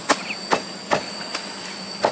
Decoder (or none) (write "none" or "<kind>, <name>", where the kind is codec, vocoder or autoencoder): none